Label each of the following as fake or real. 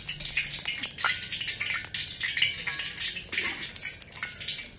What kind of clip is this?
real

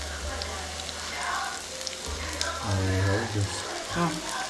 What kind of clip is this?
real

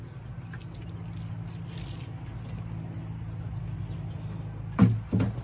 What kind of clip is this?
real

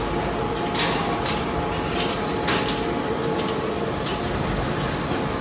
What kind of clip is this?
real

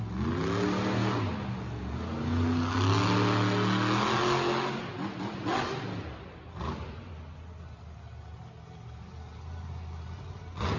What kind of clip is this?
real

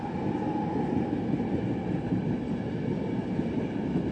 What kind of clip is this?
real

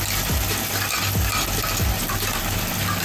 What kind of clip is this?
real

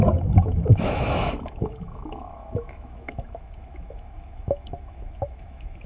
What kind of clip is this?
fake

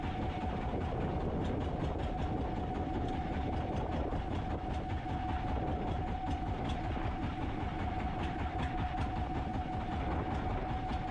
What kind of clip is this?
real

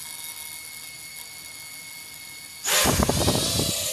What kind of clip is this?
real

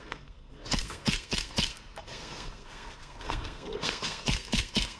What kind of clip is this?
fake